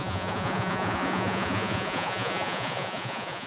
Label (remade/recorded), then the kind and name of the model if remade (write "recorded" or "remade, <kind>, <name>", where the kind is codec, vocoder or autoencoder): remade, vocoder, Vocos